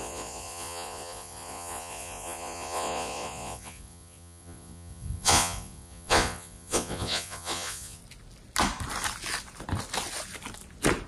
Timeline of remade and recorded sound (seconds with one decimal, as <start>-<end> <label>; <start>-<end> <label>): 0.0-8.0 remade; 8.0-11.1 recorded